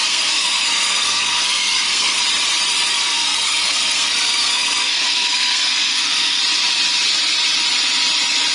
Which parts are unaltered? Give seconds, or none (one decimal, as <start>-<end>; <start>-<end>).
2.2-2.9; 6.4-8.5